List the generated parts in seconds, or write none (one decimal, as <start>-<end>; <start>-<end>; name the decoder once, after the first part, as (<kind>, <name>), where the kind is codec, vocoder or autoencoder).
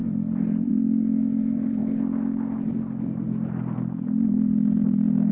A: 0.0-1.8 (vocoder, BigVGAN v2); 4.8-5.3